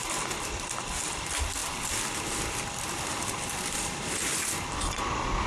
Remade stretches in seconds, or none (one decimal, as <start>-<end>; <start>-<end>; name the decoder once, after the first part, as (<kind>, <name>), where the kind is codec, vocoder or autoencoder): none

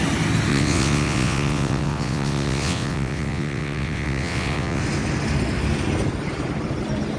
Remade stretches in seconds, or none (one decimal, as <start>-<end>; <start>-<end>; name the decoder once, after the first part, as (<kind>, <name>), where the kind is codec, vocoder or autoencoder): 0.5-4.8 (vocoder, WaveNeXt)